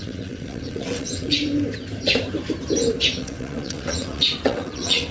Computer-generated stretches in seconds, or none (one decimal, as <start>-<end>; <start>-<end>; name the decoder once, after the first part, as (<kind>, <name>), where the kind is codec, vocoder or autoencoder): 0.0-1.4 (vocoder, WaveNeXt); 3.1-5.1